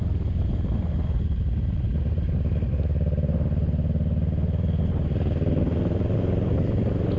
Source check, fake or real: real